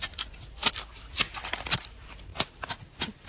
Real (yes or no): yes